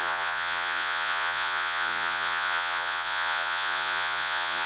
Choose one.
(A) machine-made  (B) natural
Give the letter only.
A